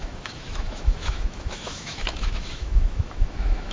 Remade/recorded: remade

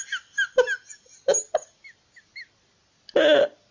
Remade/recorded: recorded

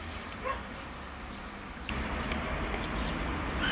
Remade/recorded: recorded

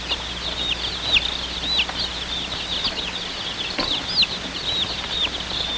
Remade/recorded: recorded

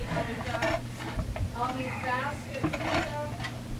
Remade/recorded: recorded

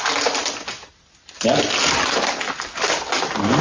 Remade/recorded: recorded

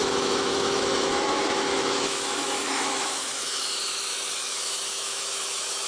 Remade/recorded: remade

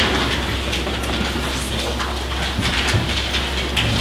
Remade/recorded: recorded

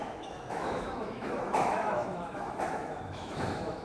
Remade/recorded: remade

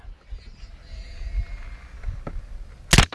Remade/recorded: recorded